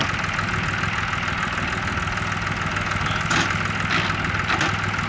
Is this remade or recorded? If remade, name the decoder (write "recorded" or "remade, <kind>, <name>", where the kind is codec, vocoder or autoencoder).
recorded